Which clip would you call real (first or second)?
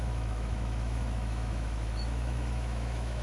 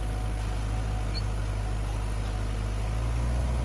second